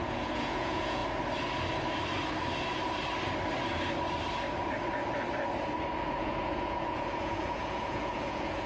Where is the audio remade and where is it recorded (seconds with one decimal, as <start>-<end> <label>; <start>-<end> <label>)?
0.0-1.0 remade; 1.0-6.0 recorded; 6.0-8.7 remade